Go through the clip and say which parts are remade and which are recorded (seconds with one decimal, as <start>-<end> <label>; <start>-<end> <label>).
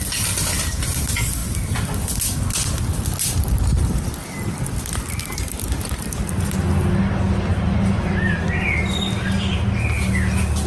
0.0-10.7 recorded